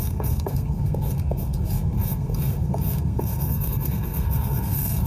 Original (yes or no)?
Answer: no